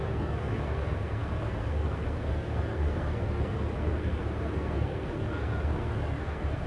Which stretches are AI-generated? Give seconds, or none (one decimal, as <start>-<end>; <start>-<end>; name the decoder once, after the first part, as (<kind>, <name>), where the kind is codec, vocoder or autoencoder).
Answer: 0.0-6.7 (codec, SNAC)